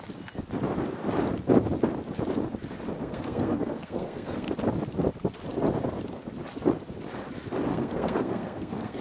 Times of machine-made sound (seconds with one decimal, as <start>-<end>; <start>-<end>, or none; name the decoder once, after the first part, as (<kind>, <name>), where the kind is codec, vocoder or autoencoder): 3.0-4.5 (codec, SNAC); 7.7-9.0